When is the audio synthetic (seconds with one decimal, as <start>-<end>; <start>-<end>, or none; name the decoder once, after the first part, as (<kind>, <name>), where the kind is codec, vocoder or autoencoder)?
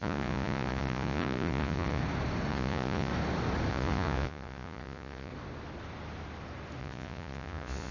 0.0-2.0 (vocoder, Vocos); 2.5-3.1; 3.7-5.3; 6.8-7.9